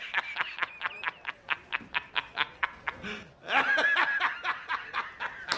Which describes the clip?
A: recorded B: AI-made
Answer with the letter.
A